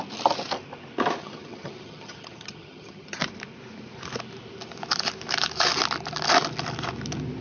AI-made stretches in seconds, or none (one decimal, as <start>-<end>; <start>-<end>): 1.2-3.2